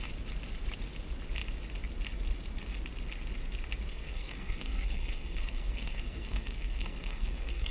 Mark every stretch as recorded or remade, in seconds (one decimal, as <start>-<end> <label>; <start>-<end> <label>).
0.0-3.9 recorded; 3.9-7.7 remade